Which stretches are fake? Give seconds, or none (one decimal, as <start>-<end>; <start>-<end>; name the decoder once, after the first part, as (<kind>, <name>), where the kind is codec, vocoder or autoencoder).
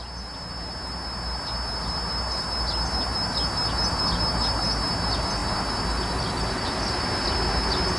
none